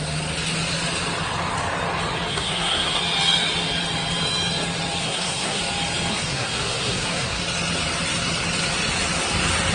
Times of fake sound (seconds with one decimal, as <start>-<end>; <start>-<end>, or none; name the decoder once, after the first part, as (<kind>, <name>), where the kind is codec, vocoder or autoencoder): 2.3-3.0 (codec, SNAC); 5.0-5.6; 6.1-7.4